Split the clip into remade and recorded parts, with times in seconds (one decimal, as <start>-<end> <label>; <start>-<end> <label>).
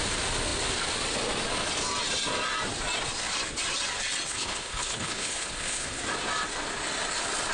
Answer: 0.0-4.3 recorded; 4.3-6.0 remade; 6.0-7.5 recorded